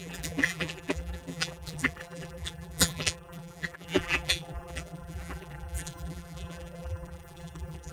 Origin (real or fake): fake